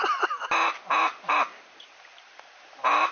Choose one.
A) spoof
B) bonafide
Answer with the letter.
B